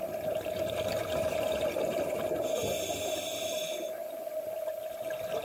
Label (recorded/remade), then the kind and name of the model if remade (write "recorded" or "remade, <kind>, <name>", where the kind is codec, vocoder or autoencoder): recorded